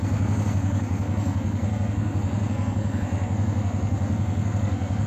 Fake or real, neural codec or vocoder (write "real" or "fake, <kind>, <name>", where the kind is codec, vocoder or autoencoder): fake, codec, SNAC